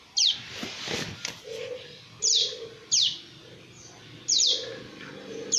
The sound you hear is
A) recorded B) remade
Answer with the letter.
A